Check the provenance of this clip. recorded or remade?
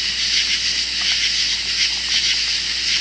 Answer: recorded